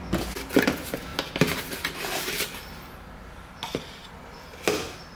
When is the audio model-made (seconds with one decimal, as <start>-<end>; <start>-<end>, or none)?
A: none